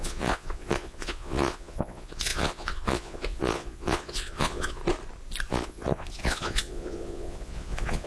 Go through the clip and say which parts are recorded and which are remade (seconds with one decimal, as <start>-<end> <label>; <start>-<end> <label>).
0.0-4.8 remade; 4.8-5.5 recorded; 5.5-8.1 remade